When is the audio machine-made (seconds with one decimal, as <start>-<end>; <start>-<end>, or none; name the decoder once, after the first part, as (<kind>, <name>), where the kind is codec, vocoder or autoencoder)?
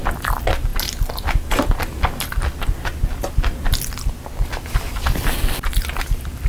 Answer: none